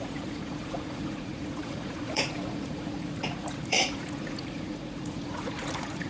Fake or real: fake